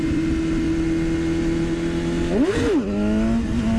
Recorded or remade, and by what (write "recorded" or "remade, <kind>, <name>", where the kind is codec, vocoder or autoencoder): recorded